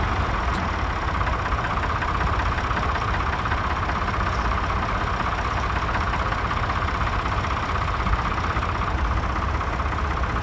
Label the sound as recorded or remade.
recorded